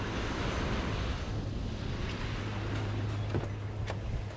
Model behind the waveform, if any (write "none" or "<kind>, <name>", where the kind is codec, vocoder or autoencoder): none